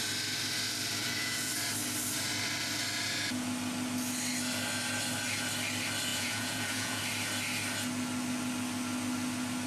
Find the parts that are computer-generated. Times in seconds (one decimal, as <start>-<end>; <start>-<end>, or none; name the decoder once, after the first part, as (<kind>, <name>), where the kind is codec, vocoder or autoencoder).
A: 1.0-1.5 (vocoder, Vocos); 6.1-7.0

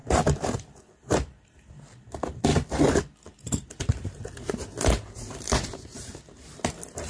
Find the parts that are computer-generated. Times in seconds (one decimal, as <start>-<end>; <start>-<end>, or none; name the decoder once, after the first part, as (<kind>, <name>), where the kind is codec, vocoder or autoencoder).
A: 0.0-1.7 (vocoder, BigVGAN v2)

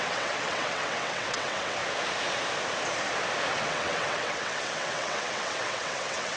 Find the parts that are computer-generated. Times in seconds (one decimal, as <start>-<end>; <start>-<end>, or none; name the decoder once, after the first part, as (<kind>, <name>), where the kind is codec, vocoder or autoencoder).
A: 0.0-1.8 (vocoder, WaveNeXt); 3.5-6.4

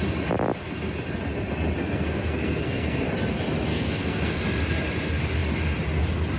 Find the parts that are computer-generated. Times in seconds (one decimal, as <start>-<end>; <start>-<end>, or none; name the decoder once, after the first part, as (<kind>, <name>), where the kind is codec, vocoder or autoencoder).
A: 1.8-3.0 (codec, SNAC); 3.7-4.4

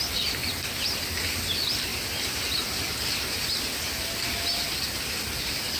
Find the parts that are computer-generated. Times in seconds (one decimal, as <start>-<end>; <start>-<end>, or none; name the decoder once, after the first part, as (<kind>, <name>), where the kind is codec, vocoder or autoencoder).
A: none

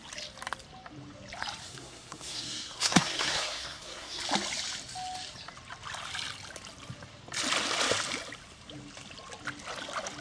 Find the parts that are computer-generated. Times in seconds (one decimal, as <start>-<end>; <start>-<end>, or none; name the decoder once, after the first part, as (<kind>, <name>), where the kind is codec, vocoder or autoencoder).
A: 1.6-4.2 (codec, SNAC)